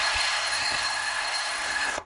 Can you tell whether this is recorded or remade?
remade